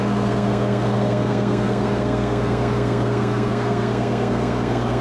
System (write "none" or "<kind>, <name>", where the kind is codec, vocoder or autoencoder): codec, SNAC